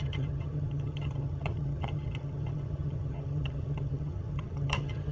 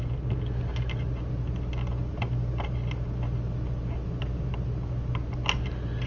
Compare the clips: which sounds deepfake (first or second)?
first